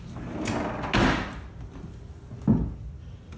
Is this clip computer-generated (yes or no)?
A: no